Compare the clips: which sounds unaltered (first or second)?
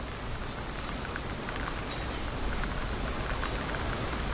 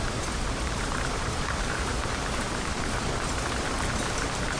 first